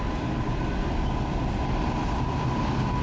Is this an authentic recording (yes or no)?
yes